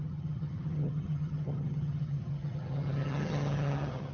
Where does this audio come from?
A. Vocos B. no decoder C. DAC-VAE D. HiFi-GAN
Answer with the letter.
D